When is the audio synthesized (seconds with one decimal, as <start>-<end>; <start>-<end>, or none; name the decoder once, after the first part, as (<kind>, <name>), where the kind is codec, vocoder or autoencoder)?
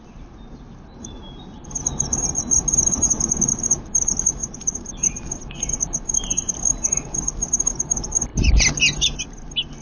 4.4-4.9 (vocoder, BigVGAN v2)